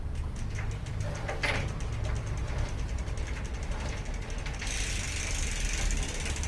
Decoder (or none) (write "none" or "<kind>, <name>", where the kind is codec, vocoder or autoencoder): none